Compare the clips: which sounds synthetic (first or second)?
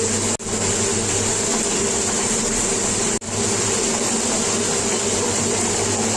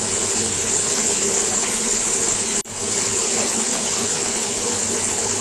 second